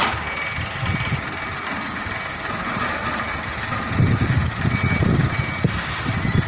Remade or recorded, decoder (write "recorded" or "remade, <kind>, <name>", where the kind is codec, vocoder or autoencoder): recorded